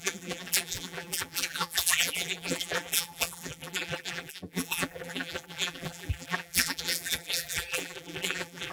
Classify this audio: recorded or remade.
remade